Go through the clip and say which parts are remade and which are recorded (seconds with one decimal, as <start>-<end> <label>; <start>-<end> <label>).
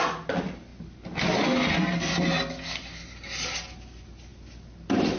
0.0-5.2 recorded